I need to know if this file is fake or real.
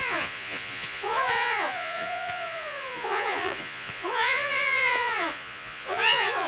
fake